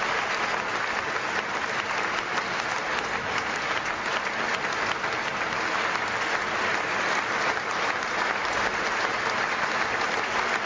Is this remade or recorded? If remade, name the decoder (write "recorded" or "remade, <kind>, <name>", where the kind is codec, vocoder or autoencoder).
recorded